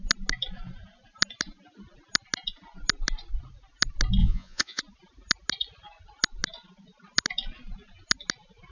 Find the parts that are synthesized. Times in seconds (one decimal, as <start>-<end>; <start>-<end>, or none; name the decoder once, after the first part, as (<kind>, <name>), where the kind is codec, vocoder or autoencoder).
4.2-4.8 (vocoder, Vocos)